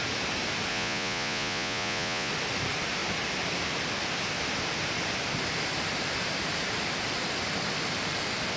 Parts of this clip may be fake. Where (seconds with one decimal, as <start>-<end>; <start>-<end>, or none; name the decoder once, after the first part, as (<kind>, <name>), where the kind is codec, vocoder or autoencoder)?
0.7-2.3 (vocoder, Vocos)